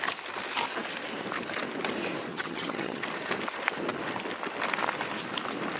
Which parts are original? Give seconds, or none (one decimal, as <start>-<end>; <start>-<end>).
0.0-2.3; 3.0-5.8